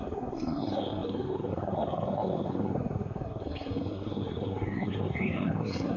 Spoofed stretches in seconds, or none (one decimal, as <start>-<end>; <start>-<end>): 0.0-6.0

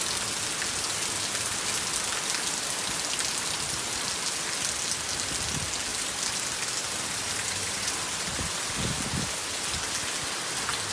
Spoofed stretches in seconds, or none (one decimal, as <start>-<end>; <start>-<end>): 5.9-7.9

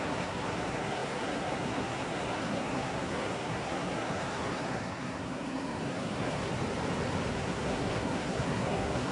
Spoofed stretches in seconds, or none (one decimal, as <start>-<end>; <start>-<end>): 0.0-6.5; 7.3-9.1

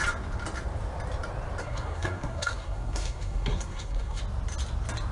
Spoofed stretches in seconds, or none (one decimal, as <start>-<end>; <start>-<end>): 1.6-4.2

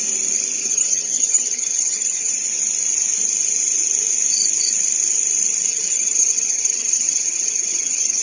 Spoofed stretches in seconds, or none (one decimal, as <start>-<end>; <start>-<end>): 0.6-2.3; 5.7-8.2

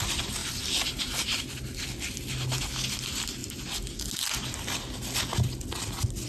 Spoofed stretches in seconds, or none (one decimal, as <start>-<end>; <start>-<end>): 0.4-1.8